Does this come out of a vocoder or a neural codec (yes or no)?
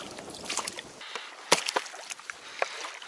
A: no